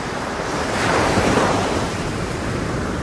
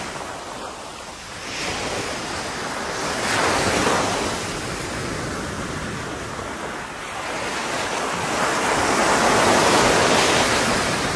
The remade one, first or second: first